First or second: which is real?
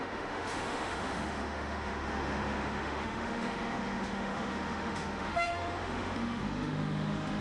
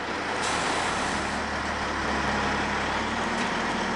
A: second